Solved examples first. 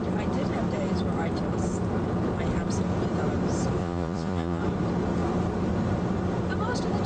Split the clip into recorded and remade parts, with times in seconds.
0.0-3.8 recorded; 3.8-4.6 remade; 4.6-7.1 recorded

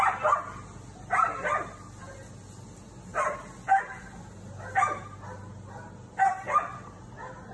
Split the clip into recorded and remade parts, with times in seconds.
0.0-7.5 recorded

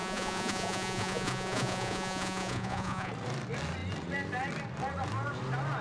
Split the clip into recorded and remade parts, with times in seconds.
0.0-3.1 remade; 3.1-5.8 recorded

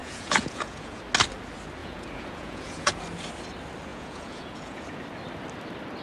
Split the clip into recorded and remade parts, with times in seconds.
0.0-1.0 remade; 1.0-1.8 recorded; 1.8-2.9 remade; 2.9-3.9 recorded; 3.9-5.0 remade; 5.0-6.0 recorded

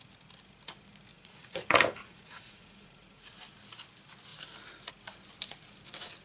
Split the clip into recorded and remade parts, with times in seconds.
0.0-1.1 recorded; 1.1-3.3 remade; 3.3-6.2 recorded

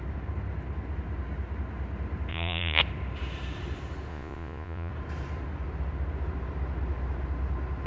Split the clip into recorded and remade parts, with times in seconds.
0.0-2.3 recorded; 2.3-2.8 remade; 2.8-4.1 recorded; 4.1-4.9 remade; 4.9-7.9 recorded

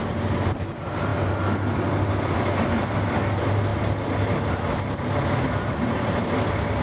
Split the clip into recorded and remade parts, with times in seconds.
0.0-6.8 recorded

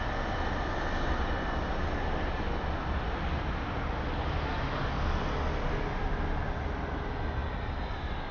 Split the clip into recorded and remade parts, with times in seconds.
0.0-8.3 recorded